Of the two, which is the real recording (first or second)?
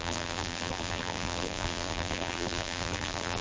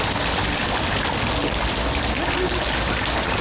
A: second